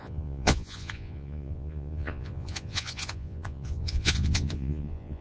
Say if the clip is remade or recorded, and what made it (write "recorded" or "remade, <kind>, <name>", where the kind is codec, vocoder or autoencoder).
remade, vocoder, Vocos